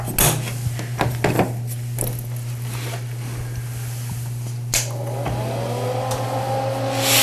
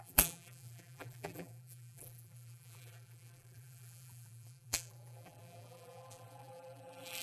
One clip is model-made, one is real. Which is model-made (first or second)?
second